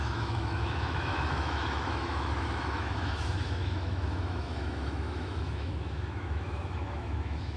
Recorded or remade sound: remade